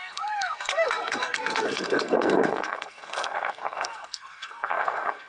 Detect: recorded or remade remade